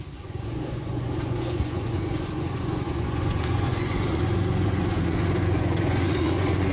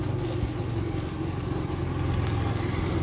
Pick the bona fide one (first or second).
second